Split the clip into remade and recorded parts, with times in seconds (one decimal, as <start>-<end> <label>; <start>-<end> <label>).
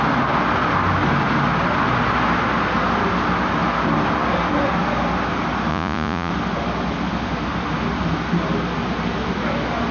0.0-5.7 recorded; 5.7-6.3 remade; 6.3-9.9 recorded